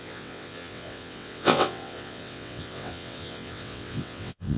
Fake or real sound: fake